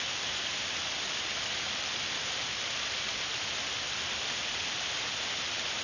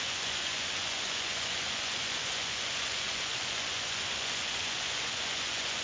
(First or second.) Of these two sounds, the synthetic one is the second